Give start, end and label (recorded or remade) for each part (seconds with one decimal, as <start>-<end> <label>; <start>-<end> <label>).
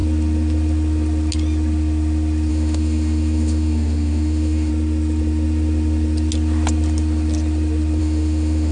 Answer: 0.0-2.5 recorded; 2.5-4.7 remade; 4.7-8.0 recorded; 8.0-8.7 remade